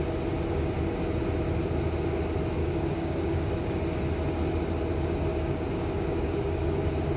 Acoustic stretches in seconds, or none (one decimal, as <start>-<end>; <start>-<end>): 0.0-2.6; 3.5-5.3; 6.7-7.2